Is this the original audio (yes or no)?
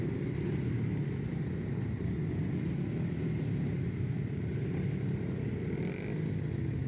yes